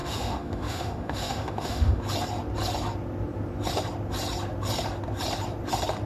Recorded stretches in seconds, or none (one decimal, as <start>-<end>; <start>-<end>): 2.0-6.1